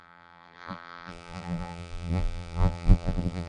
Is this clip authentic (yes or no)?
no